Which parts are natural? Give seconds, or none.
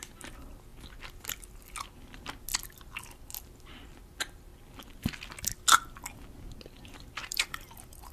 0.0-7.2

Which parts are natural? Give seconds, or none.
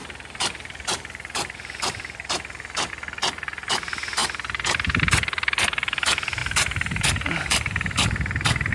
2.9-4.2; 5.0-6.4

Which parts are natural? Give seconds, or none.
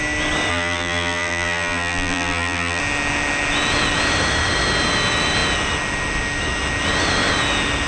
0.0-0.5; 2.8-7.9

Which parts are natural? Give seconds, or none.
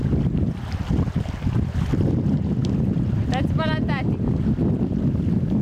0.0-5.6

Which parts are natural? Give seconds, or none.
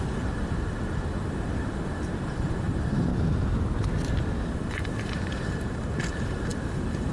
3.1-4.5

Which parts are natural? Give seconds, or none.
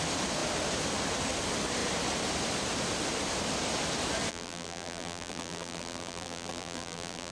0.0-4.3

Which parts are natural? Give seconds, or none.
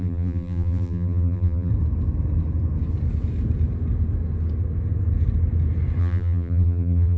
1.7-6.0